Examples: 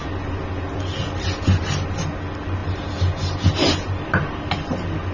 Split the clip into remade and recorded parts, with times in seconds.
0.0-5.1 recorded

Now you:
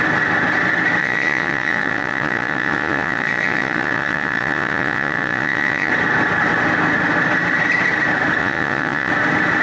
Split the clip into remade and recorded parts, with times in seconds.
0.0-1.0 recorded; 1.0-5.9 remade; 5.9-8.4 recorded; 8.4-9.1 remade; 9.1-9.6 recorded

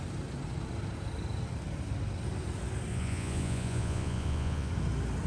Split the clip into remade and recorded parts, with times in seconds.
0.0-2.9 recorded; 2.9-4.7 remade; 4.7-5.3 recorded

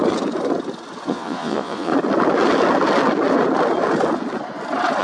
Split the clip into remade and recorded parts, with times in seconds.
0.0-1.1 recorded; 1.1-1.9 remade; 1.9-5.0 recorded